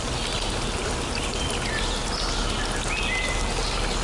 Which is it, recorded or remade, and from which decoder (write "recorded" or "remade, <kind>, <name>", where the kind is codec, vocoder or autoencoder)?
recorded